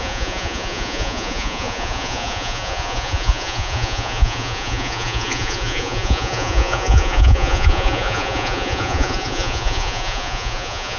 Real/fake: fake